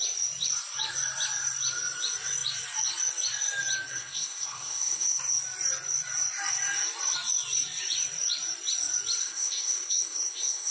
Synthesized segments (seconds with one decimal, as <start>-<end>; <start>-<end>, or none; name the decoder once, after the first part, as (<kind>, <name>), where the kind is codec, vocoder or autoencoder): 3.9-5.2 (codec, SNAC); 9.2-10.7